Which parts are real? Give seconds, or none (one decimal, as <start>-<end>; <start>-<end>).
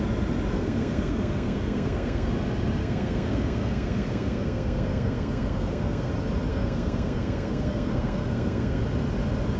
0.0-0.5; 2.3-2.8; 6.1-6.5; 8.8-9.6